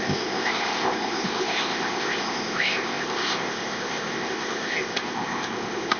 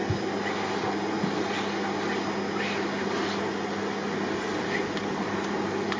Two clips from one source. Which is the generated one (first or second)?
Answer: first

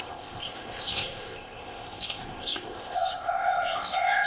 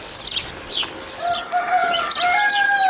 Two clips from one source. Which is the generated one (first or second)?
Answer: first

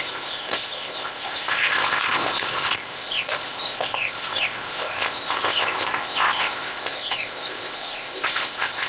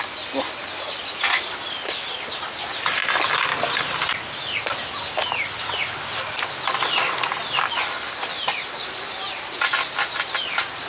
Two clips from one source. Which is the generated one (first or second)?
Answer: first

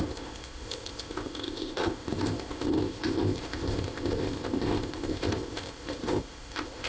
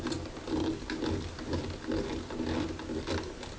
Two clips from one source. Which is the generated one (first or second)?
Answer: first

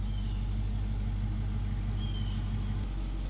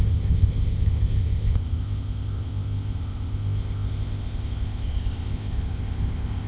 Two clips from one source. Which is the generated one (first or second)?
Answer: second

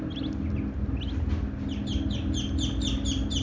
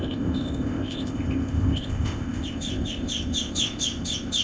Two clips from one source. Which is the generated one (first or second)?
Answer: second